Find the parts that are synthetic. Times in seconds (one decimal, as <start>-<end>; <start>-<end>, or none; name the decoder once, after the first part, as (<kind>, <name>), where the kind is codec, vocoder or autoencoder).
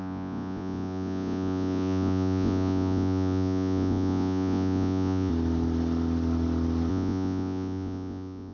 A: 0.0-5.3 (vocoder, Vocos); 6.9-8.5